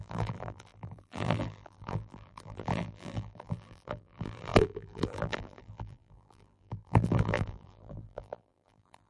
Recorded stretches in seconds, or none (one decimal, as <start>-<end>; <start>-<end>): none